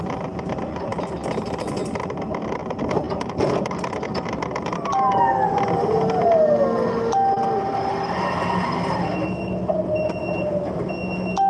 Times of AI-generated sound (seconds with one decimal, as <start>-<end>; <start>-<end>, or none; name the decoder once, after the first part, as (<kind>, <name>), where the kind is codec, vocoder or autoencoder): 1.8-2.4 (vocoder, BigVGAN v2)